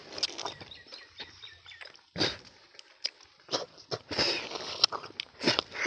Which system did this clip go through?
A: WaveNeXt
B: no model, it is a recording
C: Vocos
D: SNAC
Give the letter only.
B